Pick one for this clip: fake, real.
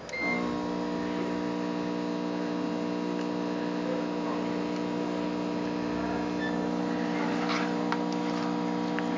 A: real